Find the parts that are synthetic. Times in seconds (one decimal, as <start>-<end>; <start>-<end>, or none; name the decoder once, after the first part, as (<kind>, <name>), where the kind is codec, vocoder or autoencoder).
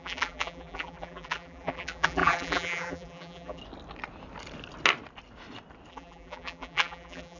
0.0-3.6 (vocoder, BigVGAN v2); 5.9-7.4